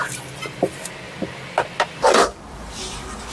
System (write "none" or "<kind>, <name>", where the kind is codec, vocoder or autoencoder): none